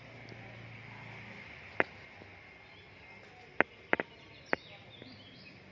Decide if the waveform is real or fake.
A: real